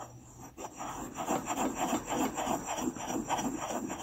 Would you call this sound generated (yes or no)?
no